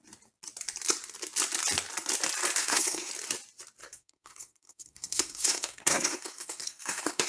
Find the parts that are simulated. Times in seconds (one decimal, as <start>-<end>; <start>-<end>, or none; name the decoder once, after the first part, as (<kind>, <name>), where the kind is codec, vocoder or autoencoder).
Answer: 2.6-3.1 (codec, SNAC); 3.8-7.3